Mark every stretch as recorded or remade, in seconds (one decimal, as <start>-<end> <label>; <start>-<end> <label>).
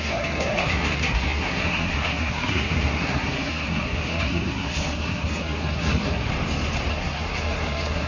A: 0.0-6.3 remade; 6.3-6.9 recorded; 6.9-8.1 remade